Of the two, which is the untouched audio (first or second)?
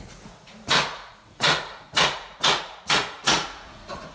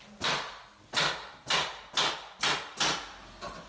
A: second